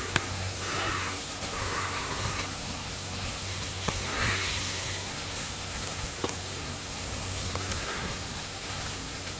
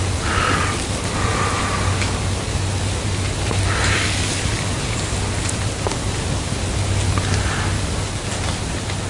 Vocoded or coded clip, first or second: first